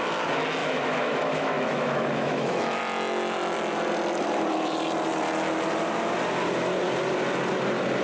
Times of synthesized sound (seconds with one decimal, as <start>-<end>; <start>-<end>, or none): 0.6-2.8